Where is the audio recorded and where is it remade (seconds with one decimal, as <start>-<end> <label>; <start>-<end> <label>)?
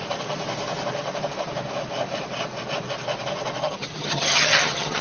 0.0-3.6 recorded; 3.6-5.0 remade